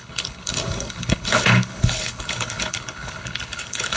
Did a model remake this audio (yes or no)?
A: yes